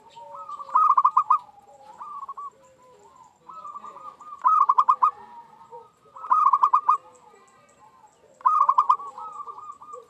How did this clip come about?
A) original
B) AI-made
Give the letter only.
A